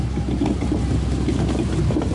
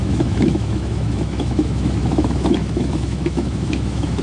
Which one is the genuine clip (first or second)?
first